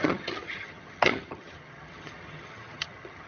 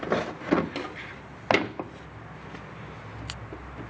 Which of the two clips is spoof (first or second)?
first